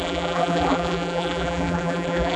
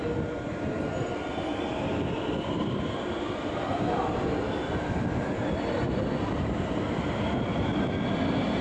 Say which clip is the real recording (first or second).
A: second